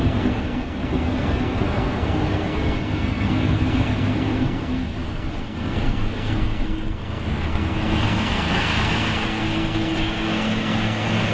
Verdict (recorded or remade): remade